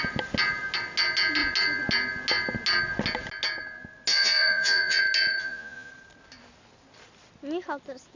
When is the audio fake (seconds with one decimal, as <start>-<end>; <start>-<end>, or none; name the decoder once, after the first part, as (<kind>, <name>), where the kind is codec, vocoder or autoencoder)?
4.1-5.0 (vocoder, Vocos); 5.4-5.9